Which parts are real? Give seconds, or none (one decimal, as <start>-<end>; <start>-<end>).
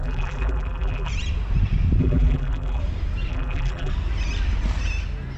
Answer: 1.1-2.0; 2.8-3.3; 3.9-5.4